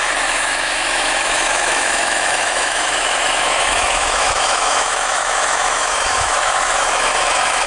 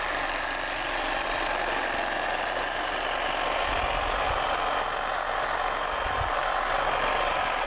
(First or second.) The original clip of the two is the second